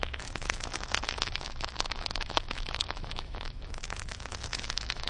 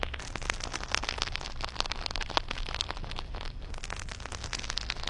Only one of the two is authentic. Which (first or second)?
second